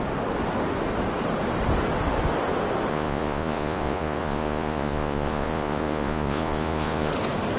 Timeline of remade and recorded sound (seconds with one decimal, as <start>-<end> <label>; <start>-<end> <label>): 0.0-2.9 recorded; 2.9-7.1 remade; 7.1-7.6 recorded